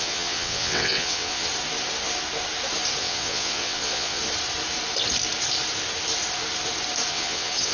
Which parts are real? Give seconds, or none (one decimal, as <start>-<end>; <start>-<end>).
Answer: 1.5-3.0; 4.2-7.1